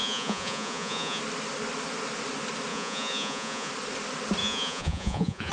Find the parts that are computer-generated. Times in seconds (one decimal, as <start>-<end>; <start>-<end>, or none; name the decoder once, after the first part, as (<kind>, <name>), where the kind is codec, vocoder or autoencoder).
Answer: 0.0-1.2 (vocoder, Vocos); 2.7-3.7; 4.4-5.5